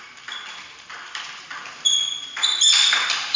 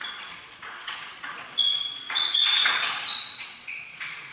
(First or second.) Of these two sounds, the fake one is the second